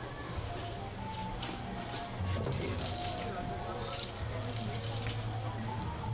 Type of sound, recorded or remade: recorded